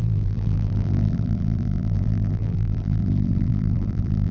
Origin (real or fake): fake